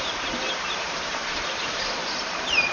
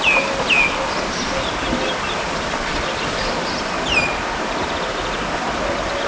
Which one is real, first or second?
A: second